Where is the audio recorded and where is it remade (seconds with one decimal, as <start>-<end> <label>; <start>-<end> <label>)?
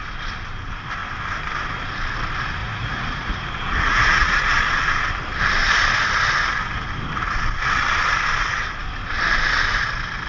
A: 0.0-2.6 recorded; 2.6-4.6 remade; 4.6-10.3 recorded